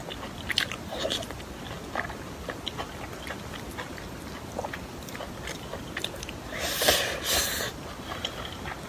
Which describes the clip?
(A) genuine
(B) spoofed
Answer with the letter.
A